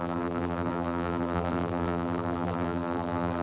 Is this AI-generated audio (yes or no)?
yes